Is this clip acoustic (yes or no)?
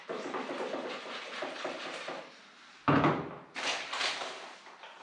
yes